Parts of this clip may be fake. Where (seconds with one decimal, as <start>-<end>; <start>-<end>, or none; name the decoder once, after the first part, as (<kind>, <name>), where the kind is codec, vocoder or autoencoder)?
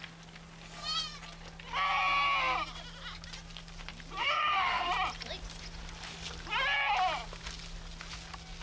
4.2-4.9 (autoencoder, DAC-VAE)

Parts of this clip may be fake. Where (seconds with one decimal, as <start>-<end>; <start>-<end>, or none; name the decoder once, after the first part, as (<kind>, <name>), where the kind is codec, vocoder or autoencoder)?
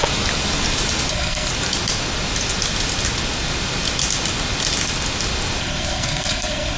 1.1-1.5 (codec, SNAC); 5.6-6.8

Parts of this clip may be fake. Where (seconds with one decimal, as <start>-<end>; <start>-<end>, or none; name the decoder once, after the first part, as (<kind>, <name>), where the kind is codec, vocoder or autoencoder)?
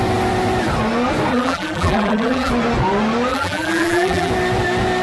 1.3-2.5 (vocoder, BigVGAN v2); 3.3-4.3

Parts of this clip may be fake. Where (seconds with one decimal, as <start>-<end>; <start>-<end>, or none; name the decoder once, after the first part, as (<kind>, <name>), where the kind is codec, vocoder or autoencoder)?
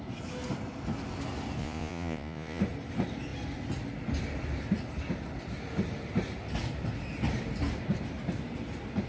1.6-2.6 (vocoder, Vocos)